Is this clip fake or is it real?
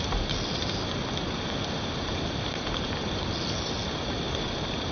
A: real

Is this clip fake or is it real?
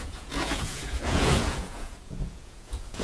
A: fake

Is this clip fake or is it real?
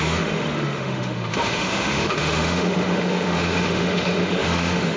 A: fake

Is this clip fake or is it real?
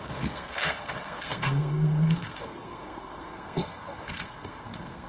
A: fake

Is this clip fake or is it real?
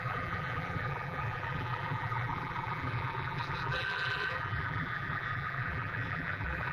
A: fake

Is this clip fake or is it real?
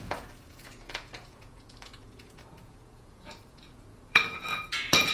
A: fake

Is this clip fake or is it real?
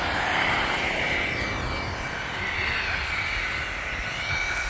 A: real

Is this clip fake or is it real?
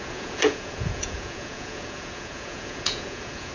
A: fake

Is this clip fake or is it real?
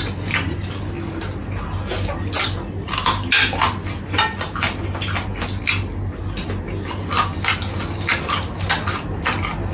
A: real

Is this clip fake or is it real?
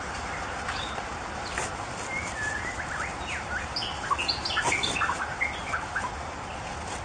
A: real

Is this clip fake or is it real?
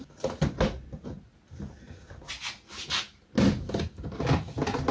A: real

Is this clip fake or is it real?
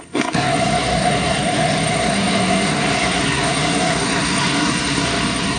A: fake